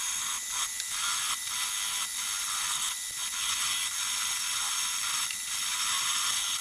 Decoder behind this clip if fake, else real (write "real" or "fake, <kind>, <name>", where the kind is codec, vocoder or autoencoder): real